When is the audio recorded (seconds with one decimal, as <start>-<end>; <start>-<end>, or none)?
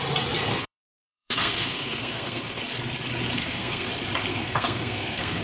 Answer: 0.0-0.5; 2.6-3.4; 3.9-4.3